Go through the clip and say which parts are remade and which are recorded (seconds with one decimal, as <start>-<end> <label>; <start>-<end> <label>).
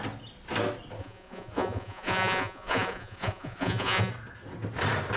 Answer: 0.0-1.0 recorded; 1.0-4.1 remade; 4.1-5.2 recorded